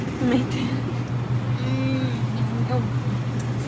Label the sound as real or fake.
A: real